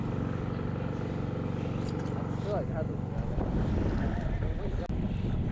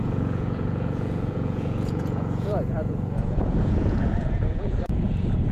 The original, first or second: first